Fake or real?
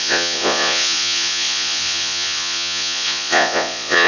fake